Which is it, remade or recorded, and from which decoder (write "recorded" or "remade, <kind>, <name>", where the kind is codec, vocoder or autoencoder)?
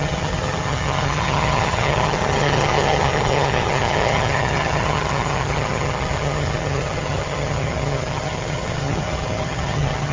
remade, vocoder, HiFi-GAN